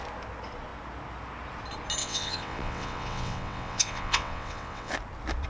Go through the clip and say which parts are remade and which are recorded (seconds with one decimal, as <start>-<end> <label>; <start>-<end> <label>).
0.0-2.0 recorded; 2.0-4.9 remade; 4.9-5.5 recorded